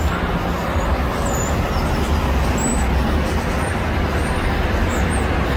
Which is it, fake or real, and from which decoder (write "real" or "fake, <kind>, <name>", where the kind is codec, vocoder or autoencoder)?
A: real